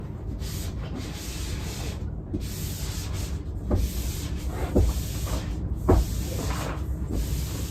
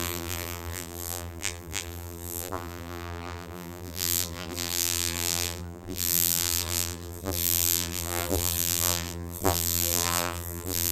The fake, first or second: second